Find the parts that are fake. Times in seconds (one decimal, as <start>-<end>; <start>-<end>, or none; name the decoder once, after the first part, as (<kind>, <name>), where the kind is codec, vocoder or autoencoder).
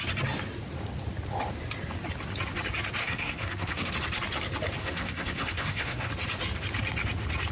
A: 3.0-3.9 (codec, SNAC); 4.8-6.1